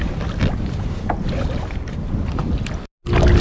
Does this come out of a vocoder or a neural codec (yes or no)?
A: no